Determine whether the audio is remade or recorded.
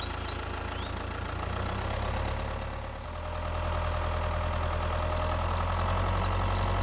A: recorded